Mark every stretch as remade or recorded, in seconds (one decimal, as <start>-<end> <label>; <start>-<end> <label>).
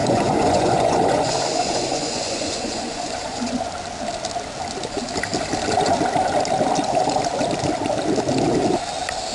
0.0-3.7 remade; 3.7-9.3 recorded